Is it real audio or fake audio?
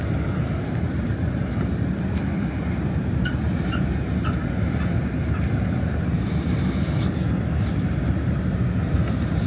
real